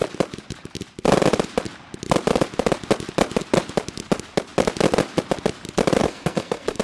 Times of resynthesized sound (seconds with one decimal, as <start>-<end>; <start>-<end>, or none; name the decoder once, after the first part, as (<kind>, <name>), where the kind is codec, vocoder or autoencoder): 6.0-6.8 (codec, SNAC)